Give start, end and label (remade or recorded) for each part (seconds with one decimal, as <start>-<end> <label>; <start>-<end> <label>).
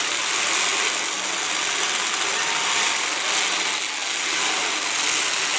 0.0-5.6 recorded